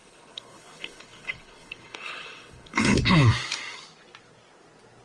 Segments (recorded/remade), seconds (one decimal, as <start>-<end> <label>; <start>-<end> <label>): 0.0-3.0 remade; 3.0-5.0 recorded